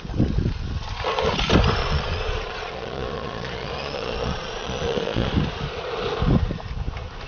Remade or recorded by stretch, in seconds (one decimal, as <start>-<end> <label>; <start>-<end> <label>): 0.0-1.8 recorded; 1.8-5.3 remade; 5.3-7.3 recorded